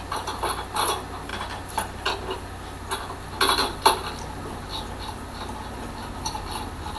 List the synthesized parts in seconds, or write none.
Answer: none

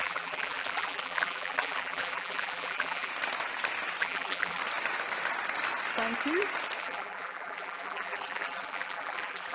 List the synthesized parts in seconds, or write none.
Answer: 0.0-3.1 (vocoder, BigVGAN v2); 4.0-4.6; 6.8-9.5

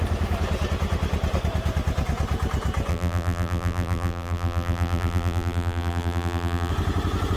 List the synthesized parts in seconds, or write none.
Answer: 2.9-6.7 (vocoder, BigVGAN v2)

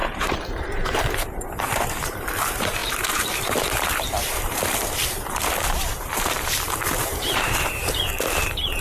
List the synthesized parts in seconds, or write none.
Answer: 0.0-8.8 (vocoder, BigVGAN v2)

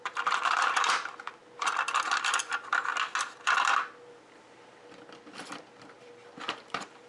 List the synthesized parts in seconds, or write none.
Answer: 0.0-1.4 (vocoder, BigVGAN v2); 2.4-2.9; 5.3-7.1